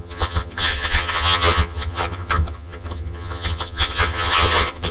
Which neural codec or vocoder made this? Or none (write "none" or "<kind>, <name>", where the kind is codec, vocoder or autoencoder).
vocoder, HiFi-GAN